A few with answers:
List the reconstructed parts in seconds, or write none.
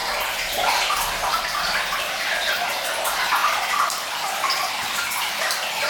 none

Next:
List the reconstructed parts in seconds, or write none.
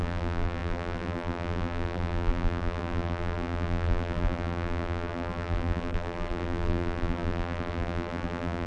0.0-8.7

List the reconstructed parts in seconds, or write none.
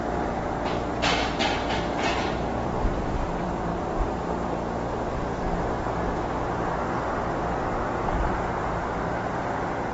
0.0-3.7; 8.1-9.9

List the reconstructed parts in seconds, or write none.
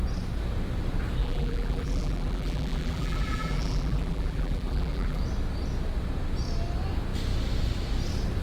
1.2-5.2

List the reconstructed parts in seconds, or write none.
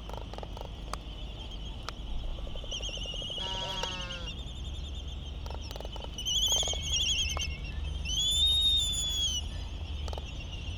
2.3-3.9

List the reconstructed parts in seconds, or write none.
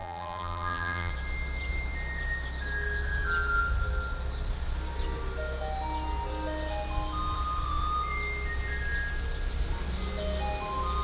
0.0-1.1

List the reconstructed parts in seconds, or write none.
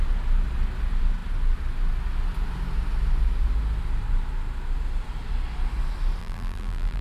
6.2-7.0